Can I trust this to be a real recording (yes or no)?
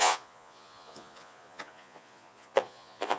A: no